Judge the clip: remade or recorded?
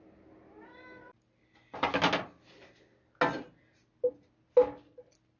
recorded